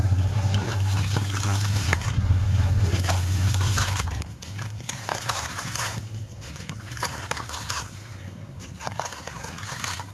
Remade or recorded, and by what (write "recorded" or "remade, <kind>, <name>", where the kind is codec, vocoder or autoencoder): remade, codec, SNAC